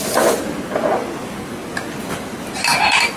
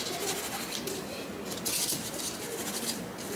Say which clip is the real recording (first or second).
second